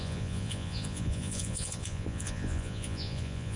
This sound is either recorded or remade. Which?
remade